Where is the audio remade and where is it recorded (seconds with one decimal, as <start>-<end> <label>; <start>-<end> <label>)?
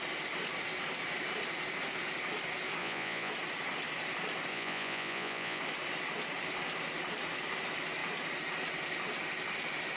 0.0-2.8 recorded; 2.8-3.3 remade; 3.3-4.5 recorded; 4.5-5.6 remade; 5.6-10.0 recorded